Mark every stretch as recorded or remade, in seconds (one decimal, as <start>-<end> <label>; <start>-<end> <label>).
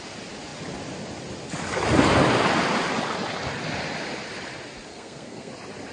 0.0-4.9 recorded; 4.9-5.5 remade; 5.5-5.9 recorded